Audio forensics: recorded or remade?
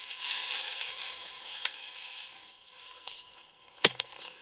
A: remade